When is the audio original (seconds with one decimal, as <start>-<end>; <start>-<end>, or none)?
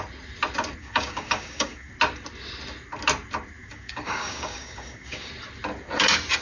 0.0-0.8; 1.9-3.6; 5.3-6.4